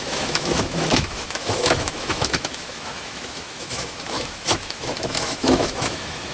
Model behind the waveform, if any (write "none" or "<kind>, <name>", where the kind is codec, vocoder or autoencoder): autoencoder, DAC-VAE